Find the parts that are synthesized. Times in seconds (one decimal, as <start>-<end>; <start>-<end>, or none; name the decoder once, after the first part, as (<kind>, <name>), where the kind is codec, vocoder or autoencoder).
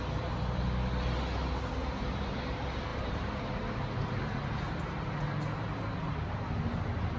1.8-2.4 (vocoder, BigVGAN v2); 2.9-4.4